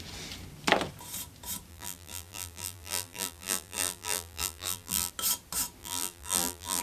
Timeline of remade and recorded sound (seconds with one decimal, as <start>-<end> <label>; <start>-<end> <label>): 0.0-1.7 recorded; 1.7-5.1 remade; 5.1-5.8 recorded; 5.8-6.8 remade